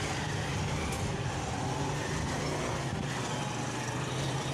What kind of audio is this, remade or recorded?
recorded